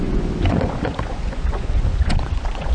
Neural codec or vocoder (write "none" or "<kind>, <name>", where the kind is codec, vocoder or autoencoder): vocoder, Vocos